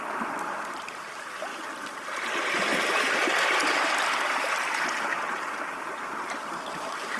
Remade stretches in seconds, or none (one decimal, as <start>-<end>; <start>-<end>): none